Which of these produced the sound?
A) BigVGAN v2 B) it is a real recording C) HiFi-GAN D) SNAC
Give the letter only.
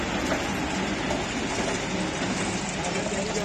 B